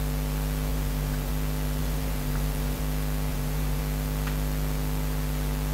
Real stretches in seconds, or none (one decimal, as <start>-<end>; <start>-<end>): 0.0-0.7; 1.3-1.8; 2.8-3.3; 3.8-5.7